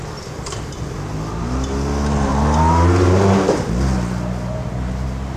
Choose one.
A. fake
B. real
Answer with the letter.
B